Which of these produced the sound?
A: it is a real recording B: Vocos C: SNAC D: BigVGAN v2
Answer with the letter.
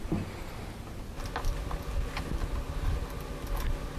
A